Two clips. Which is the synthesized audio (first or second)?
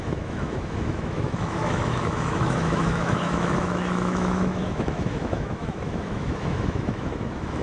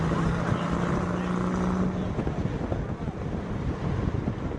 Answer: first